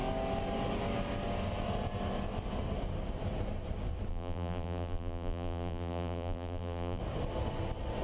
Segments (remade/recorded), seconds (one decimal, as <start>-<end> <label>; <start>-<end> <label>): 0.0-4.1 recorded; 4.1-7.0 remade; 7.0-8.0 recorded